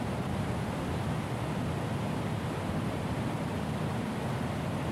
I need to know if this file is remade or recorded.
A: recorded